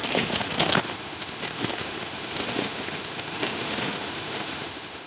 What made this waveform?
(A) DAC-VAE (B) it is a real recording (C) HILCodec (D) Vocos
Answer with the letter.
A